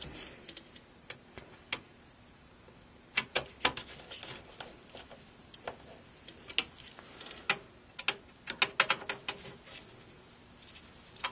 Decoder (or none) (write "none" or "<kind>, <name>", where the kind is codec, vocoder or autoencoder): none